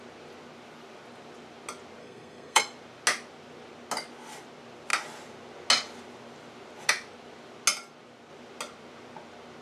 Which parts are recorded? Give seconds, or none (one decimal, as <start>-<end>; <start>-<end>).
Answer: 0.0-2.0; 2.6-9.6